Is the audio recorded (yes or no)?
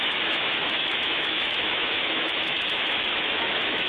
no